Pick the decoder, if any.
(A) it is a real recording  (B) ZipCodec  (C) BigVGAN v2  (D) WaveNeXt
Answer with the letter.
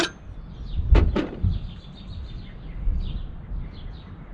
A